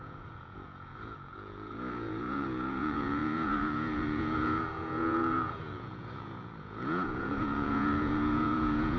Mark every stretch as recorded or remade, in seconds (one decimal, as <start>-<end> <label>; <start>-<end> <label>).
0.0-9.0 remade